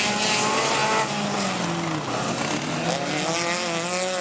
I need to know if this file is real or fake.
real